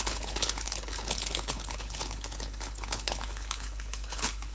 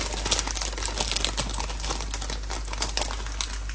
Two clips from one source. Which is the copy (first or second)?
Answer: first